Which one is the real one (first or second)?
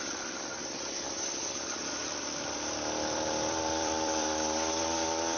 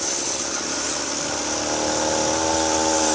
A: second